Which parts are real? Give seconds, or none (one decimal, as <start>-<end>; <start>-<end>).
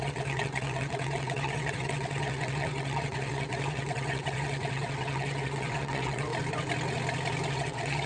6.3-7.5